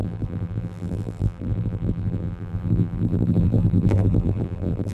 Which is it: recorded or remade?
remade